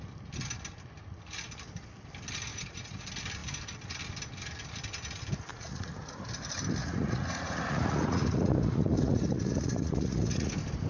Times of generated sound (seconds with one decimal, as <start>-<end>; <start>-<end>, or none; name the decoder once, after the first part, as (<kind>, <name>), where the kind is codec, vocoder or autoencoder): 2.5-3.0 (vocoder, Vocos); 5.5-6.2; 6.8-10.5